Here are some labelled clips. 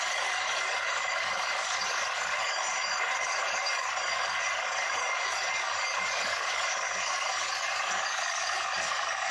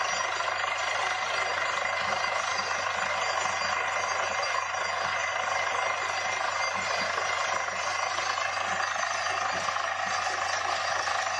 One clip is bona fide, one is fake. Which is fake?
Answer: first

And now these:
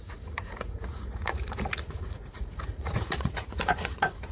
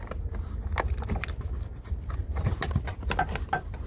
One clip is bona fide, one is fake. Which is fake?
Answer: first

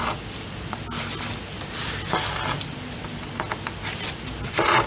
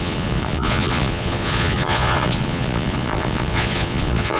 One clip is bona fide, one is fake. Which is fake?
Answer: second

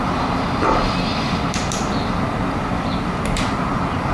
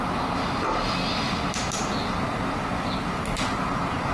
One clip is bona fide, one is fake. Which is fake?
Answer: first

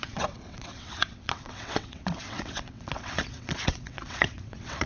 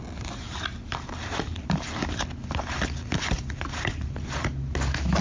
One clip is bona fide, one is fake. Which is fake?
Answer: first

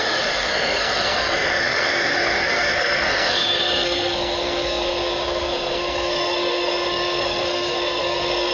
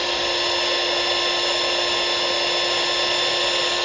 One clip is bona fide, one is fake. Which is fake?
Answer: first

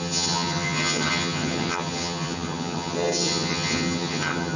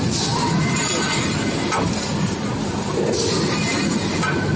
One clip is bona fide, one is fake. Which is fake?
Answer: first